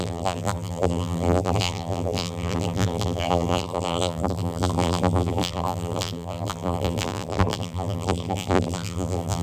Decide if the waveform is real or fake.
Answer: fake